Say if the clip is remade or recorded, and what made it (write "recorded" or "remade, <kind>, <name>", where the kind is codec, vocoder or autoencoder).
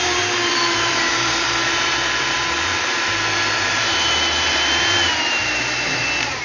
remade, vocoder, BigVGAN v2